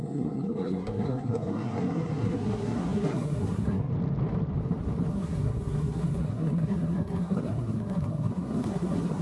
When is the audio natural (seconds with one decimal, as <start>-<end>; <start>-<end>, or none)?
3.9-5.1